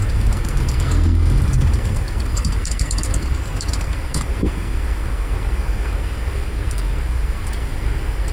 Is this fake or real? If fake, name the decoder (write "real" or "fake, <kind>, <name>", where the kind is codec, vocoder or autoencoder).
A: fake, codec, SNAC